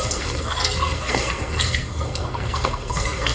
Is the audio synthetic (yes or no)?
yes